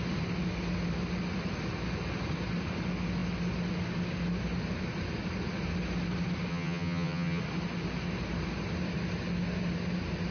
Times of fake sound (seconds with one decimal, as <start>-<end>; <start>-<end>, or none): 6.5-7.4